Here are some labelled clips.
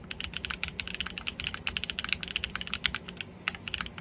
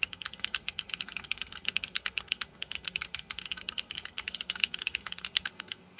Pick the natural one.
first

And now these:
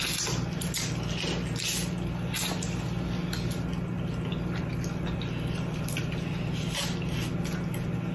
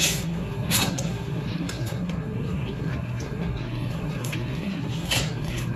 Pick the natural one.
first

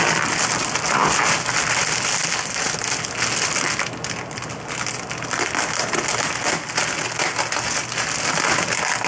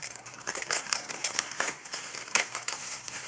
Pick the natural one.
first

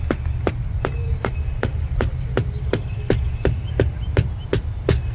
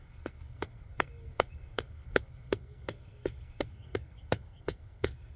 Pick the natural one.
first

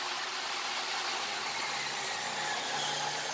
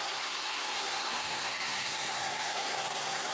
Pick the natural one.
first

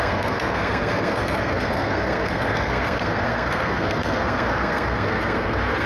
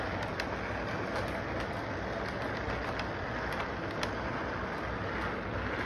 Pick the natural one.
second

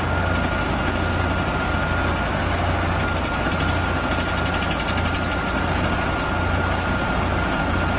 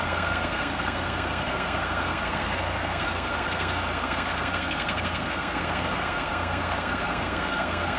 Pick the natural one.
first